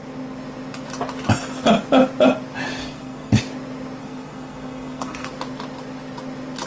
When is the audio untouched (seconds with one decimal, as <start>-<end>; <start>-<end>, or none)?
0.0-2.8; 3.4-4.0; 5.3-6.7